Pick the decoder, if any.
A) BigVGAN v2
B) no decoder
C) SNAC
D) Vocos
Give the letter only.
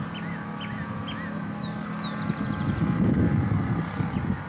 B